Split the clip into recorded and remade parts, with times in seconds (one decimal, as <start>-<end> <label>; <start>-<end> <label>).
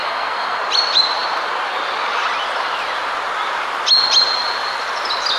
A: 0.0-0.6 remade; 0.6-5.4 recorded